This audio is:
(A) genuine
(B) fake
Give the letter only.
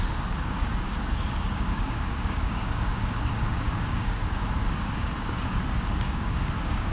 B